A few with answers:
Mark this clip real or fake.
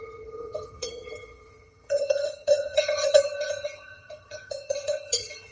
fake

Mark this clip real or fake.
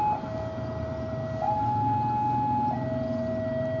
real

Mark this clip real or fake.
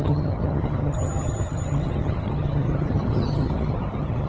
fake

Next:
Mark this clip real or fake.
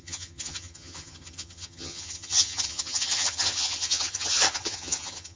fake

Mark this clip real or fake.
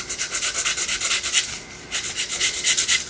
real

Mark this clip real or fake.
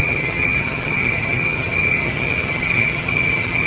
fake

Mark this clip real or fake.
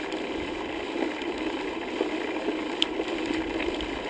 real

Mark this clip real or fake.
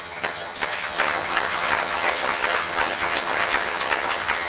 fake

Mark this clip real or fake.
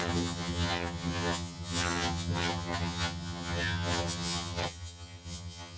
fake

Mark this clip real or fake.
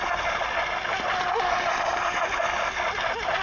real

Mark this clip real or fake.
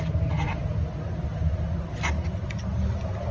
real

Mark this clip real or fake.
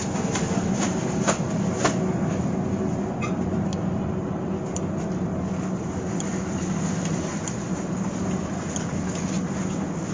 real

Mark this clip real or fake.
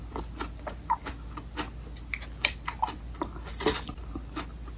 real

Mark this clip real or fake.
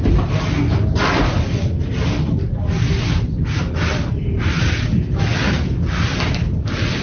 real